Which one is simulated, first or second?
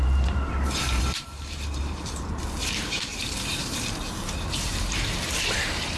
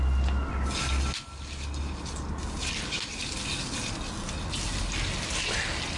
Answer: first